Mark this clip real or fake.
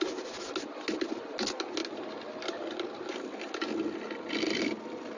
real